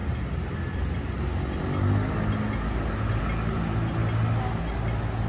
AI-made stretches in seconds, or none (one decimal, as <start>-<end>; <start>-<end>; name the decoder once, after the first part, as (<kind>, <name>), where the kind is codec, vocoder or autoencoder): none